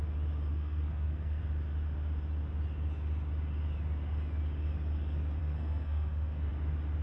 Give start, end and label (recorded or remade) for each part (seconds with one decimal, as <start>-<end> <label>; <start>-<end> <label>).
0.0-0.5 recorded; 0.5-1.4 remade; 1.4-5.4 recorded; 5.4-6.5 remade; 6.5-7.0 recorded